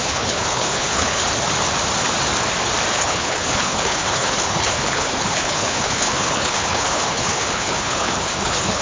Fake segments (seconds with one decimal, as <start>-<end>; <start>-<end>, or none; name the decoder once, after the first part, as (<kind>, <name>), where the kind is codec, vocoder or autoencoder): 0.0-1.2 (codec, HILCodec); 2.9-8.8